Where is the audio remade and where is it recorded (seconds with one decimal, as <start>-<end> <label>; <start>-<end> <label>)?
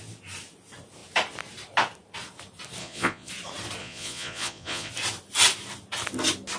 0.0-2.8 recorded; 2.8-3.3 remade; 3.3-3.8 recorded; 3.8-4.9 remade; 4.9-6.6 recorded